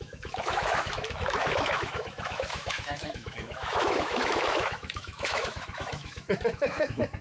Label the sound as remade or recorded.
remade